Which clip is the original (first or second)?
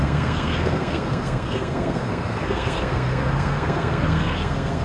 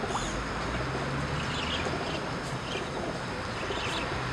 second